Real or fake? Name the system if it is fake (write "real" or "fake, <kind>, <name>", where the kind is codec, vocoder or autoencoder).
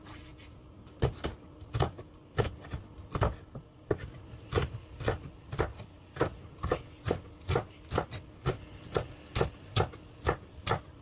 real